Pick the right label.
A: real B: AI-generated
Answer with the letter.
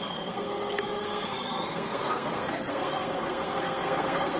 B